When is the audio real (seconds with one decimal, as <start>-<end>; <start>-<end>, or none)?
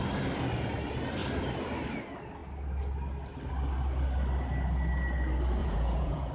0.0-5.6